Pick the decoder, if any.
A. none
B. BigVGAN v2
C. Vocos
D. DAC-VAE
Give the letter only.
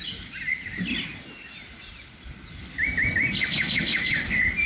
A